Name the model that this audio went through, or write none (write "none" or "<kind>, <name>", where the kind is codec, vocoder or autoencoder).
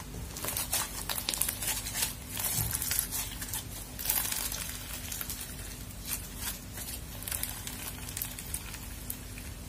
none